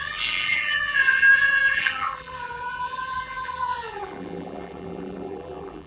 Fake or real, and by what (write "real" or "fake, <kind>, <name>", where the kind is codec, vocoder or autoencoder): fake, vocoder, BigVGAN v2